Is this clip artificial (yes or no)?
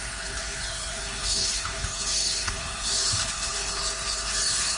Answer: yes